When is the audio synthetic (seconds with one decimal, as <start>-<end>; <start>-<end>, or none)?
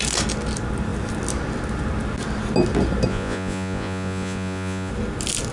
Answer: 3.1-4.9